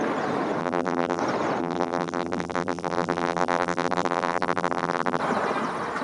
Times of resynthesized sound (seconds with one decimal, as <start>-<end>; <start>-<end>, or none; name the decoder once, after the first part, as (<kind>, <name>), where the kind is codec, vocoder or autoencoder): 0.6-1.2 (vocoder, BigVGAN v2); 1.6-5.2